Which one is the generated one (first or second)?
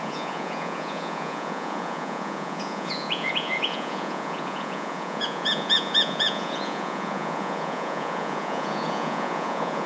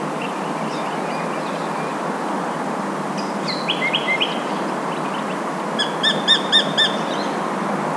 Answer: first